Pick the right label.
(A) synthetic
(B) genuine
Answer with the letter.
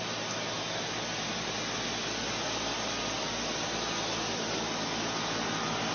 B